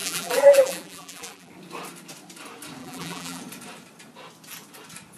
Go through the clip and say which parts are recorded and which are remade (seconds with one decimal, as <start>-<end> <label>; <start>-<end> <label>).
0.0-1.5 remade; 1.5-2.8 recorded; 2.8-3.4 remade; 3.4-5.2 recorded